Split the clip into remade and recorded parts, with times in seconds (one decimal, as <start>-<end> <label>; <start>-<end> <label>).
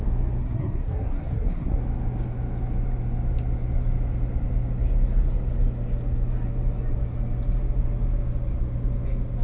0.0-0.4 recorded; 0.4-1.8 remade; 1.8-9.4 recorded